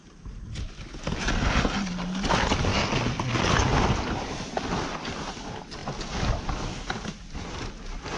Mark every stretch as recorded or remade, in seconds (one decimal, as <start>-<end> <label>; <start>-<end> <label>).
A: 0.0-8.2 recorded